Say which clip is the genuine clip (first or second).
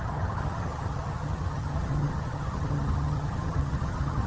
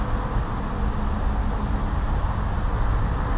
second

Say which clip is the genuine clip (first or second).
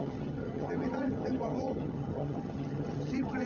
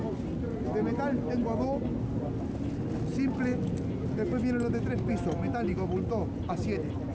second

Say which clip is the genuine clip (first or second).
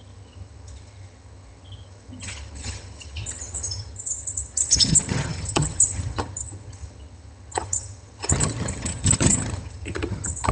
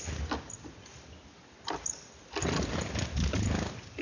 second